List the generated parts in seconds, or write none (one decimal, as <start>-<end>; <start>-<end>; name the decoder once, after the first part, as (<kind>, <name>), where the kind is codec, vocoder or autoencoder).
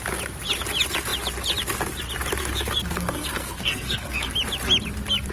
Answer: 2.4-4.3 (codec, SNAC)